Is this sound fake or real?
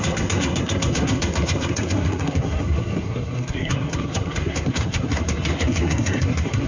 fake